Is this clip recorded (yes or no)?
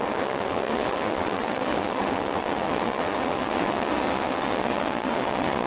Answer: no